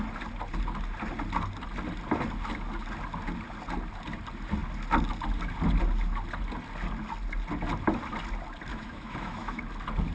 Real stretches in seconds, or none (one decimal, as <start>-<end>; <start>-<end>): 0.0-8.7; 9.6-10.1